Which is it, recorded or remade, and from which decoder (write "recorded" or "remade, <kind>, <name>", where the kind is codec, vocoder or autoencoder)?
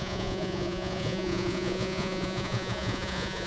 remade, vocoder, Vocos